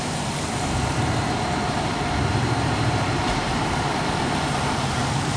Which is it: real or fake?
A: fake